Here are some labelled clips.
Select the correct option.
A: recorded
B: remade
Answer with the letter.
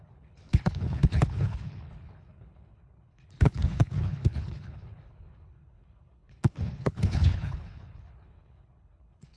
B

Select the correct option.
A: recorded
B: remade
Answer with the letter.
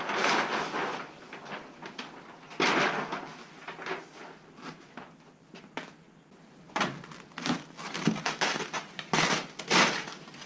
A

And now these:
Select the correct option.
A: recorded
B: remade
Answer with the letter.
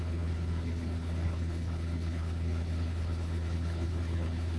B